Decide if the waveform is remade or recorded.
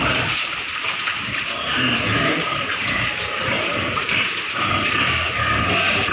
remade